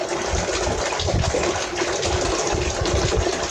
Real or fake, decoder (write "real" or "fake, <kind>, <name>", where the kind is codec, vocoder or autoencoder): real